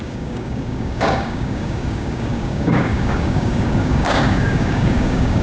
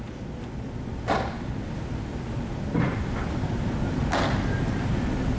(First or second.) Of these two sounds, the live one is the second